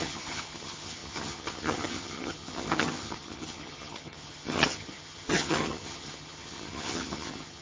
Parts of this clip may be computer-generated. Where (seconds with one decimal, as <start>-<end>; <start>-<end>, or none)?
0.0-7.6